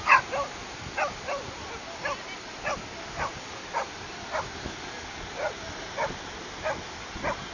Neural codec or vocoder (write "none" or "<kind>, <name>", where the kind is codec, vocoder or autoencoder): none